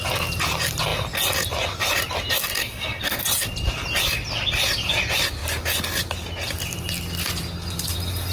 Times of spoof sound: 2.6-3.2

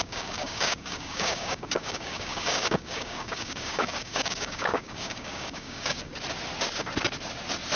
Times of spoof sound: 0.0-6.1

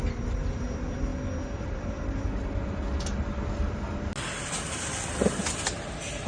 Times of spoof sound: none